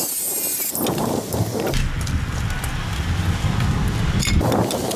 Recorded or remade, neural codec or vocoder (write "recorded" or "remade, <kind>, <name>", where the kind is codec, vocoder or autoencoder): recorded